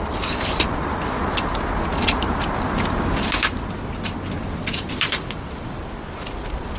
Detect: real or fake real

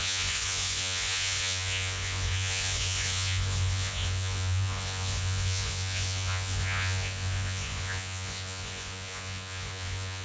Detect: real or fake fake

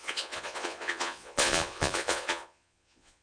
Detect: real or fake fake